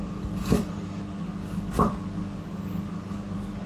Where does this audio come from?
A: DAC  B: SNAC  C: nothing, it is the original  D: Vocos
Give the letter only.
A